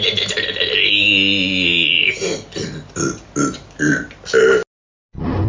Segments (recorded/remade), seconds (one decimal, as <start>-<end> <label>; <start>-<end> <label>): 0.0-5.5 recorded